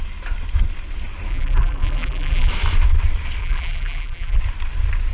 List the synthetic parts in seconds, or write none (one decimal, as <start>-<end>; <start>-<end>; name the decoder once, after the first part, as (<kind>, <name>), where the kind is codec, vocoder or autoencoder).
1.3-2.5 (vocoder, BigVGAN v2); 3.4-4.4